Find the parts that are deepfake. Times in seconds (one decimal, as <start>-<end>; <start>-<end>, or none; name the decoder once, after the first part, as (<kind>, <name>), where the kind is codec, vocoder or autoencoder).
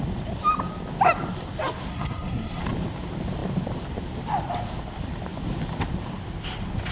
1.9-2.6 (codec, SNAC)